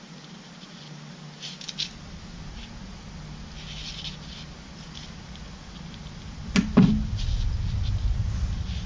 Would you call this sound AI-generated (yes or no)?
no